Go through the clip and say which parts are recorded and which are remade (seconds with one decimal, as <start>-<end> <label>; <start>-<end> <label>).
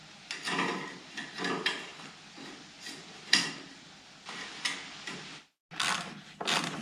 0.0-1.1 recorded; 1.1-5.6 remade; 5.6-6.1 recorded; 6.1-6.8 remade